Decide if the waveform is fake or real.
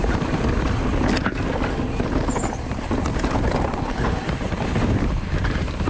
real